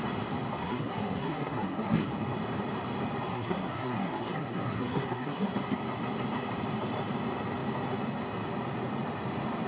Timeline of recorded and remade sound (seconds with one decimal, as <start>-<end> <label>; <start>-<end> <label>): 0.0-0.6 recorded; 0.6-2.1 remade; 2.1-3.3 recorded; 3.3-5.5 remade; 5.5-9.7 recorded